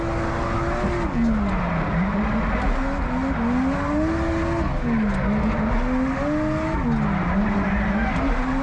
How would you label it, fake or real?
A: real